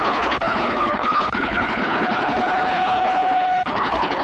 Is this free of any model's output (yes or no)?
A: no